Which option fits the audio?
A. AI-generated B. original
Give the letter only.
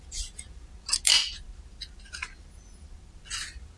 B